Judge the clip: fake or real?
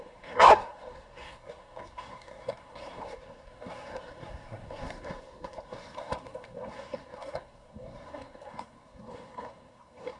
fake